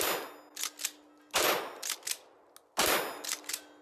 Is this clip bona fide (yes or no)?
yes